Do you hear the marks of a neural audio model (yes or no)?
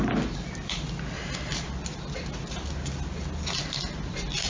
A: no